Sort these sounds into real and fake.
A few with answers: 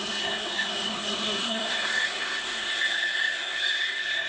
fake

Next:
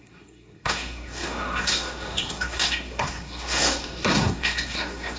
fake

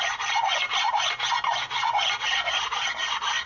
real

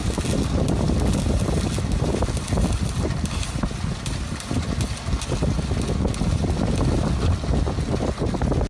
real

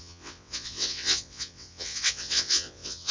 fake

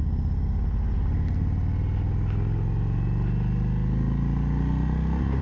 real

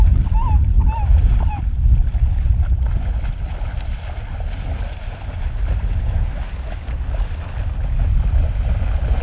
real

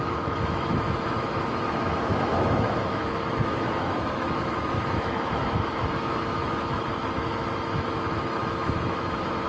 fake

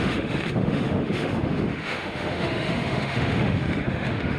fake